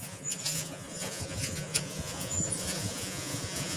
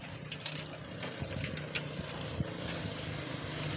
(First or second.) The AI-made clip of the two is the first